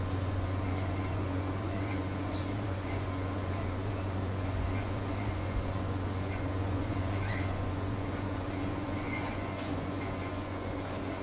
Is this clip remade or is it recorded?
remade